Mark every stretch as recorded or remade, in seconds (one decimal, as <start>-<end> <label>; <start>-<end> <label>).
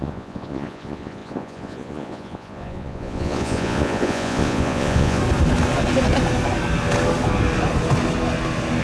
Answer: 0.0-5.2 remade; 5.2-8.8 recorded